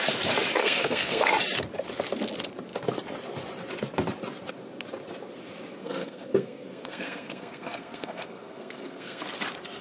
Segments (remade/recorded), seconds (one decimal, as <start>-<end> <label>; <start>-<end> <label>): 0.0-0.6 recorded; 0.6-1.3 remade; 1.3-5.8 recorded; 5.8-9.2 remade; 9.2-9.8 recorded